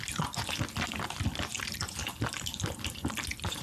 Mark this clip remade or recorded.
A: recorded